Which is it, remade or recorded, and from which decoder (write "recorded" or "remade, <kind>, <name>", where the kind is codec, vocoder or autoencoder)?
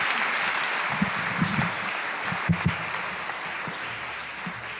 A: recorded